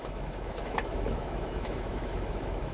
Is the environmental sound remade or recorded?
remade